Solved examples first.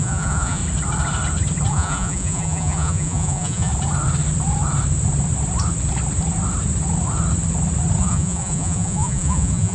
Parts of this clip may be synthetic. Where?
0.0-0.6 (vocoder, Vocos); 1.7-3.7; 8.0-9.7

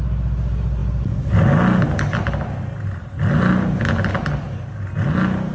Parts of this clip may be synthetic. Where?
none

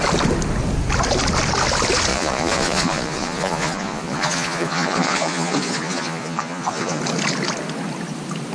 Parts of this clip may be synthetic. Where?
2.1-7.0 (vocoder, Vocos)

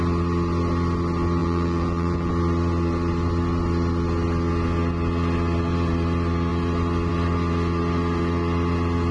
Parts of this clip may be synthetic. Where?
1.4-2.3 (vocoder, Vocos)

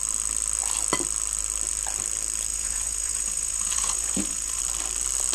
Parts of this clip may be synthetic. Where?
2.5-4.6 (vocoder, Vocos)

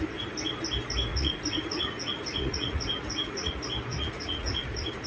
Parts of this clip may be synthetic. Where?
1.1-3.5 (vocoder, Vocos); 3.9-5.1

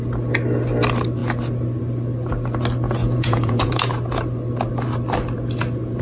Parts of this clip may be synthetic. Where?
3.0-3.8 (vocoder, Vocos)

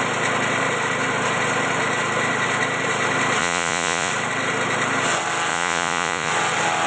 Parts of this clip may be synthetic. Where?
3.4-4.1 (vocoder, Vocos); 5.5-6.3